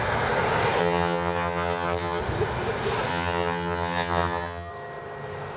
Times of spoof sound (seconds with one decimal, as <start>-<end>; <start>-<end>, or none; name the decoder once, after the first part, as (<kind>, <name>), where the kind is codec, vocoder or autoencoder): 0.8-2.2 (vocoder, HiFi-GAN); 3.1-4.7